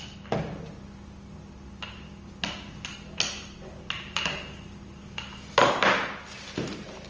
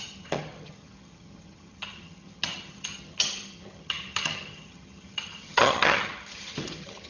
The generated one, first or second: second